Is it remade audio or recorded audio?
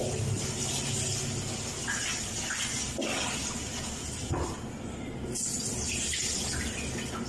recorded